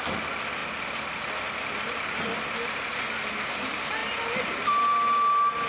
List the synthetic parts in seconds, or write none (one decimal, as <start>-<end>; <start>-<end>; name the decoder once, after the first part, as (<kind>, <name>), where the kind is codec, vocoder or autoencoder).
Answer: none